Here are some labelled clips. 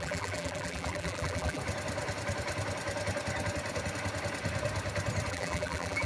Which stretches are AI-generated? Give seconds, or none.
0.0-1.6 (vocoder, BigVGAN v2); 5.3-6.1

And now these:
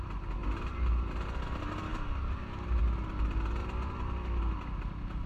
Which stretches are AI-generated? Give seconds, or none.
0.4-0.9 (vocoder, BigVGAN v2); 1.9-2.8; 3.6-4.7

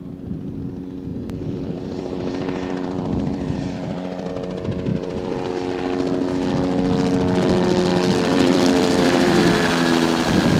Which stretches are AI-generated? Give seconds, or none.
1.1-4.3 (vocoder, BigVGAN v2); 4.9-5.5; 7.9-9.4

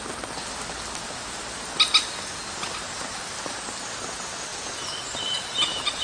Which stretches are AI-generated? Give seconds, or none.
4.5-6.0 (vocoder, BigVGAN v2)

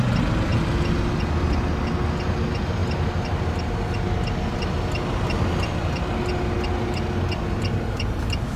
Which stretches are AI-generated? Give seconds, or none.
none

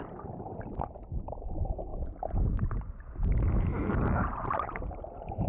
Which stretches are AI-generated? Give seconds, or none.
1.9-5.5 (vocoder, BigVGAN v2)

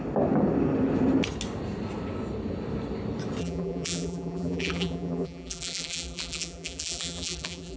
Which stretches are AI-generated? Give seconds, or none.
3.4-7.8 (vocoder, BigVGAN v2)

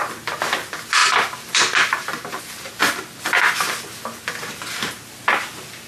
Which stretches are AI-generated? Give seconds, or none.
1.0-2.4 (vocoder, BigVGAN v2)